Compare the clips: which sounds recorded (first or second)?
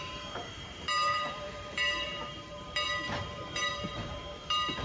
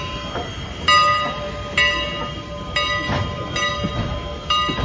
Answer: second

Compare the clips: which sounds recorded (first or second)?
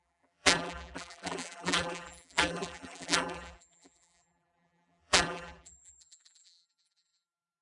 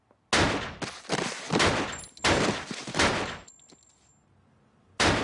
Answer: second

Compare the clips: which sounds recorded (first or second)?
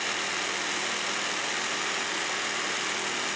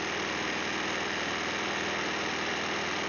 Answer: second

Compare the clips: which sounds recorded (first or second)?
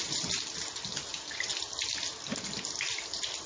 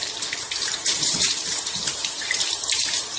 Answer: first